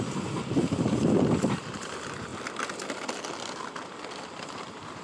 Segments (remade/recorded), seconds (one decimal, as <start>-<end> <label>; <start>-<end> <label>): 0.0-2.3 remade; 2.3-3.4 recorded; 3.4-5.0 remade